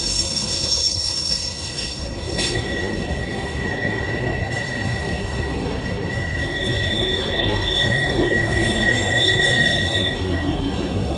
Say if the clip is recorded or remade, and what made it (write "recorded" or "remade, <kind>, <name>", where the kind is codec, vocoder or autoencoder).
remade, codec, SNAC